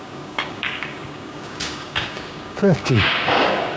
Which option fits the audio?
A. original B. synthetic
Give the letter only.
B